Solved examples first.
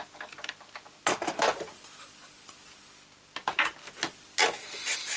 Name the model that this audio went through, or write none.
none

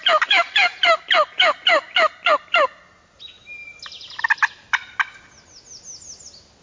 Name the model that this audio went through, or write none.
none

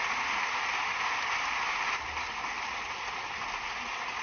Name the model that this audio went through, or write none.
none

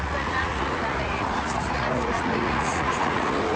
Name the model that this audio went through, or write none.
vocoder, Vocos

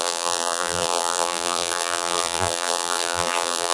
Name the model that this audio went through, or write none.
vocoder, BigVGAN v2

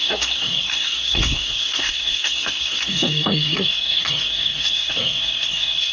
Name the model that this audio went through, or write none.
codec, SNAC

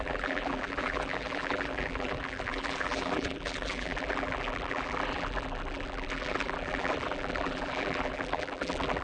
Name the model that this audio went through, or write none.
vocoder, BigVGAN v2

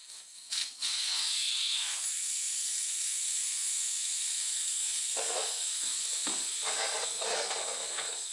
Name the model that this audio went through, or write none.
codec, SNAC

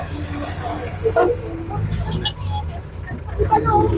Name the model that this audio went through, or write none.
none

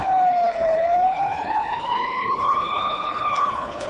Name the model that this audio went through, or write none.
codec, HILCodec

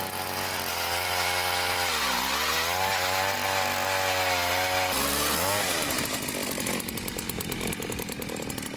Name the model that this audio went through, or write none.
none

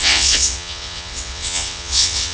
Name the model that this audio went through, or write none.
vocoder, WaveNeXt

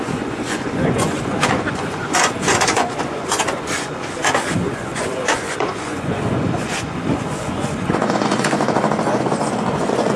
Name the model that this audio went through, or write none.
vocoder, Vocos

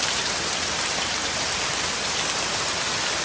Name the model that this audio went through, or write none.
none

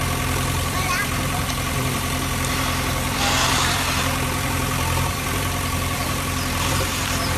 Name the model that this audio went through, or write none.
vocoder, BigVGAN v2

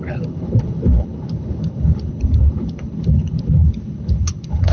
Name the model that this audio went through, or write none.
codec, HILCodec